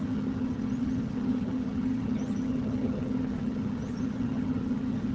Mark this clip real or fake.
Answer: fake